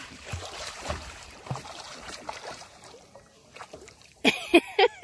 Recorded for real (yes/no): no